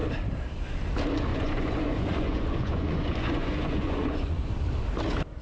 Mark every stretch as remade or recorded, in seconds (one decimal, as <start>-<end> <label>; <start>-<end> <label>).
0.0-1.3 recorded; 1.3-4.5 remade; 4.5-5.4 recorded